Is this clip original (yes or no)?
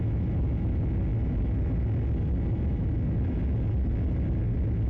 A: yes